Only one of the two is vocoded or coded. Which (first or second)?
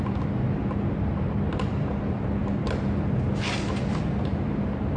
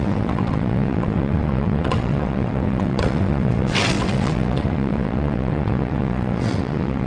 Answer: second